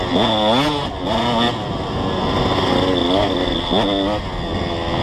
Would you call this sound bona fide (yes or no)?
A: yes